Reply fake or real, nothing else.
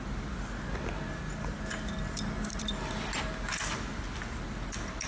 real